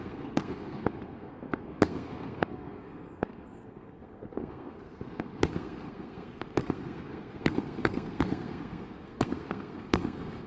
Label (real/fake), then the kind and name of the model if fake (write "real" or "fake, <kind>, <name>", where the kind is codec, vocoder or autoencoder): fake, codec, SNAC